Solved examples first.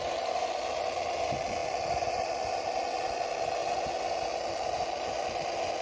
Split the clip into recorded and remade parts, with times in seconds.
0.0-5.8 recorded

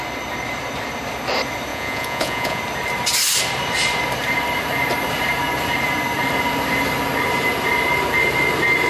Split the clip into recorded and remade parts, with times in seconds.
0.0-1.7 recorded; 1.7-2.6 remade; 2.6-8.9 recorded

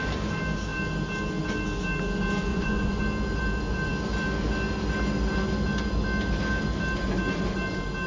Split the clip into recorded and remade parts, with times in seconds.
0.0-2.5 recorded; 2.5-3.0 remade; 3.0-8.1 recorded

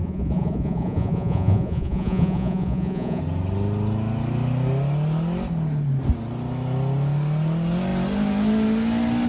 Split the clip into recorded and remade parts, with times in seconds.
0.0-3.2 remade; 3.2-9.3 recorded

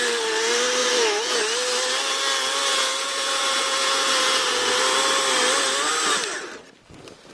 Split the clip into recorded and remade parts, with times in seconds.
0.0-0.8 recorded; 0.8-1.4 remade; 1.4-2.7 recorded; 2.7-4.7 remade; 4.7-7.3 recorded

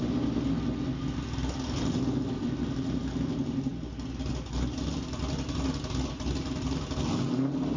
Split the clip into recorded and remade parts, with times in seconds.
0.0-7.8 recorded